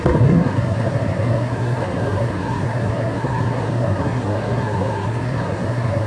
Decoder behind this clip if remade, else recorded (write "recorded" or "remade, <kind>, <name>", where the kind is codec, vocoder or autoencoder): remade, codec, SNAC